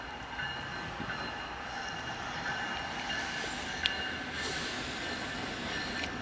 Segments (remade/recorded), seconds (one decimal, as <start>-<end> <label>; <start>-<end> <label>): 0.0-6.2 recorded